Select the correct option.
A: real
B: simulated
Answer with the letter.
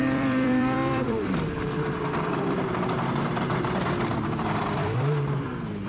B